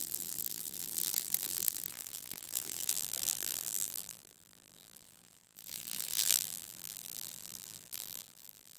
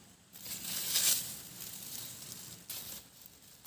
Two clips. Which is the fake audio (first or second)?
first